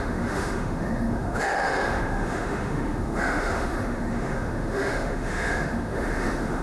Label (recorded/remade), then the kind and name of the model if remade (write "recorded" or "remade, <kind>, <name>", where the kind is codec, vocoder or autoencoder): remade, autoencoder, DAC-VAE